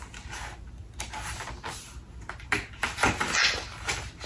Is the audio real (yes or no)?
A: yes